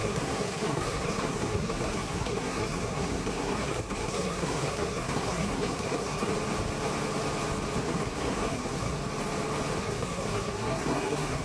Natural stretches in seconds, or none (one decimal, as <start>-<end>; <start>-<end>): 6.3-7.8; 9.0-9.8